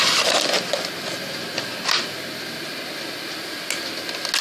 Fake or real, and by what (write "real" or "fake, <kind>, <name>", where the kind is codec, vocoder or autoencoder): real